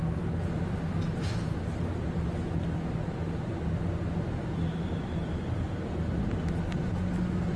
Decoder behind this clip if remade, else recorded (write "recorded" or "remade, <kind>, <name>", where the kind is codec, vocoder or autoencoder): recorded